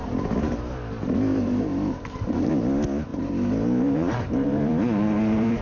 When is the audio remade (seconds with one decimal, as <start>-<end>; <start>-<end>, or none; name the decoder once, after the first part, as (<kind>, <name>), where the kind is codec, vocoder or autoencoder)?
1.3-2.5 (vocoder, BigVGAN v2); 3.1-5.6